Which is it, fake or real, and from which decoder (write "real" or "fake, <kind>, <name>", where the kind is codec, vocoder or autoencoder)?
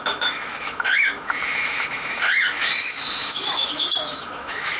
fake, autoencoder, DAC-VAE